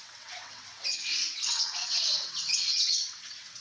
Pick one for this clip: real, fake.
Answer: fake